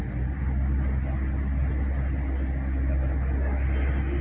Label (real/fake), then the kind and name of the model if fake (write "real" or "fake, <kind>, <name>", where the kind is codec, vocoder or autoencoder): real